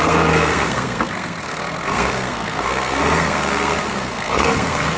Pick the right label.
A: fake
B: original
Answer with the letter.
A